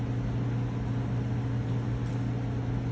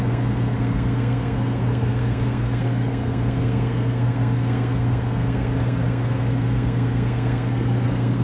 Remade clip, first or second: second